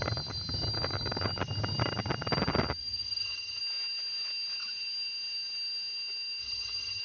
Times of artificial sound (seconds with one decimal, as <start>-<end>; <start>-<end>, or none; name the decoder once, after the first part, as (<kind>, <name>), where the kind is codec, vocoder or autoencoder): 2.8-3.6 (vocoder, HiFi-GAN); 6.4-7.0